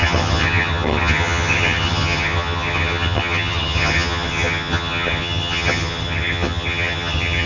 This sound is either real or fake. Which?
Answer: fake